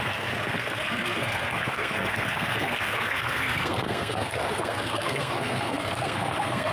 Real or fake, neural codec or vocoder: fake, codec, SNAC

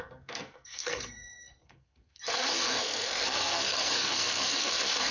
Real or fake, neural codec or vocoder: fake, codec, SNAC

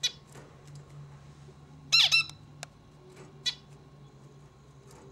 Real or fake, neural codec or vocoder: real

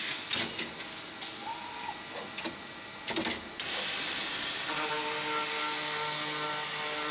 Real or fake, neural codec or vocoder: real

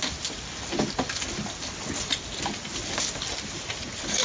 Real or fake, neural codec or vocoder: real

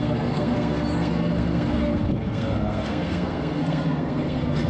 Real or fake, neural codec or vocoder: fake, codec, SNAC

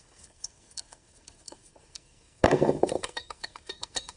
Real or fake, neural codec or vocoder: fake, codec, SNAC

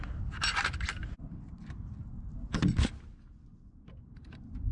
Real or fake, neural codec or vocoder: real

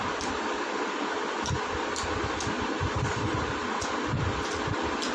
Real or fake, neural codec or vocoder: real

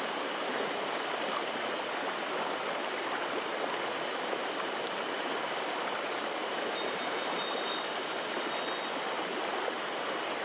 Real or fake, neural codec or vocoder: real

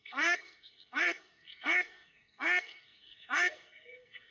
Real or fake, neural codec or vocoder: fake, codec, SNAC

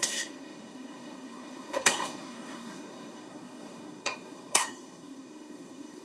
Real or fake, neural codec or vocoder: fake, codec, SNAC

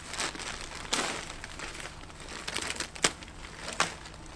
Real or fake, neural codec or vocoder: real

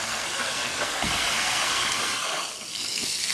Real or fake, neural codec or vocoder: fake, codec, SNAC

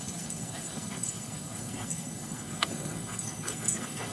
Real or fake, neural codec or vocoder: fake, codec, SNAC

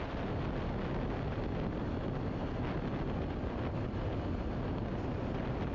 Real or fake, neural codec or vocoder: real